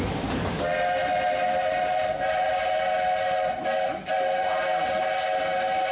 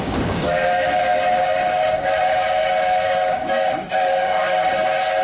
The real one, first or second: first